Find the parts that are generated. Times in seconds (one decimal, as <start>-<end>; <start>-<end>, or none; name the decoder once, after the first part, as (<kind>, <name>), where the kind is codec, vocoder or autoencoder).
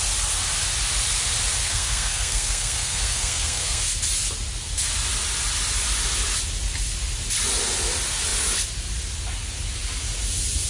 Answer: 1.6-3.8 (codec, SNAC)